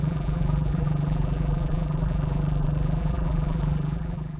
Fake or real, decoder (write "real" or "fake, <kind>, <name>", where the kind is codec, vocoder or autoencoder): fake, vocoder, BigVGAN v2